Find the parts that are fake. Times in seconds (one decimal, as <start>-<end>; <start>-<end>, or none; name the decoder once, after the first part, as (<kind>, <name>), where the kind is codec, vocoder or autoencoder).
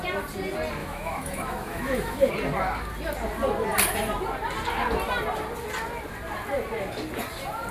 0.8-2.3 (autoencoder, DAC-VAE)